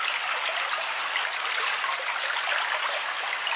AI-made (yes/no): no